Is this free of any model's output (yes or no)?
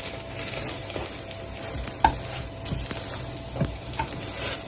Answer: yes